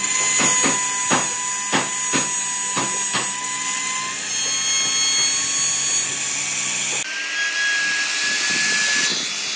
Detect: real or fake real